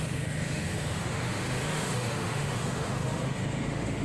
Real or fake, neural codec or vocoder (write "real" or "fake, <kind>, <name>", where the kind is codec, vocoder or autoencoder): fake, autoencoder, DAC-VAE